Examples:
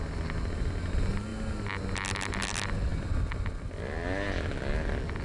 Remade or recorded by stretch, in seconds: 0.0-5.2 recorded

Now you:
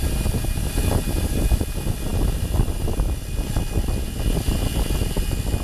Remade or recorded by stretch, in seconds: 0.0-5.6 recorded

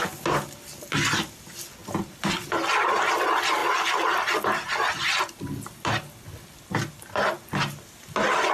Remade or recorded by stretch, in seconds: 0.0-1.8 recorded; 1.8-2.9 remade; 2.9-3.6 recorded; 3.6-6.9 remade; 6.9-8.5 recorded

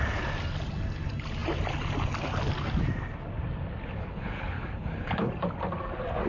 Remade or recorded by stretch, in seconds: 0.0-4.0 recorded; 4.0-5.3 remade; 5.3-6.3 recorded

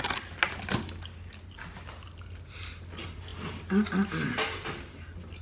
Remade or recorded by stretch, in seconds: 0.0-5.4 recorded